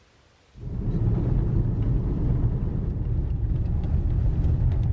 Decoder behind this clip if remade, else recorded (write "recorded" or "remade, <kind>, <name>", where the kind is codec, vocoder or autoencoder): recorded